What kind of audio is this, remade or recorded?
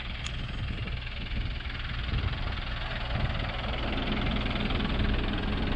recorded